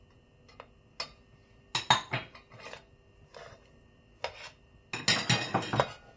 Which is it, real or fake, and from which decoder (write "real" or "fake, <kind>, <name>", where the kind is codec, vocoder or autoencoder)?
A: real